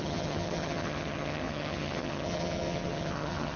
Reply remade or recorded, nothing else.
remade